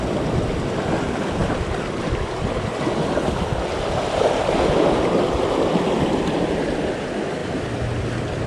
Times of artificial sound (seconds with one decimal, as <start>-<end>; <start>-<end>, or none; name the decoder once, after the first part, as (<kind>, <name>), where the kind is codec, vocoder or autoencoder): 0.0-7.4 (vocoder, BigVGAN v2)